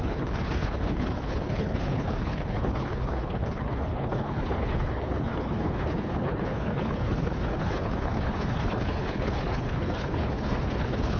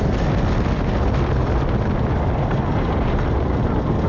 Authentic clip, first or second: second